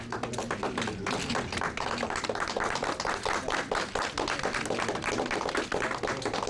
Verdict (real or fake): real